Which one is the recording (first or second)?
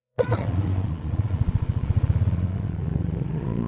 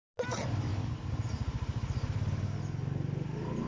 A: second